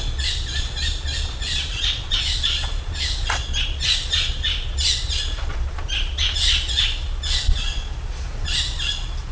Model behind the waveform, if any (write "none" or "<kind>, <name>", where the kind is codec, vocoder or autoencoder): vocoder, Vocos